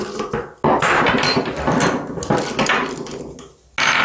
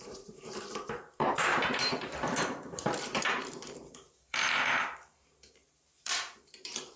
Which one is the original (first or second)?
first